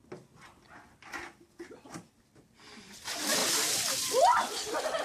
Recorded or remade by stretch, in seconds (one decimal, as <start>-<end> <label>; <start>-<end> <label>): 0.0-5.0 recorded